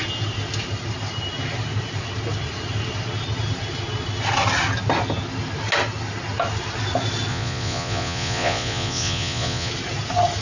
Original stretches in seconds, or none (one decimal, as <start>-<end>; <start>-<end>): 0.0-7.3; 9.7-10.4